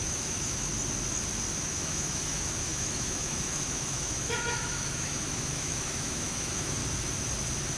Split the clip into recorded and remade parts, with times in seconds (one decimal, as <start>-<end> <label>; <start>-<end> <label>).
0.0-0.7 remade; 0.7-1.6 recorded; 1.6-6.8 remade; 6.8-7.8 recorded